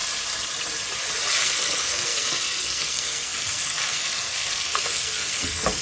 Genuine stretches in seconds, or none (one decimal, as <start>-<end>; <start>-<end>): 0.0-1.4